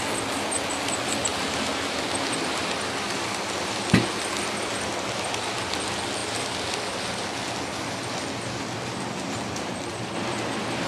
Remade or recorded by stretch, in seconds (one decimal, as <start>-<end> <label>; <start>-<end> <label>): 0.0-10.9 recorded